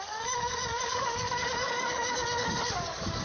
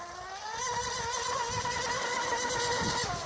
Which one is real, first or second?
second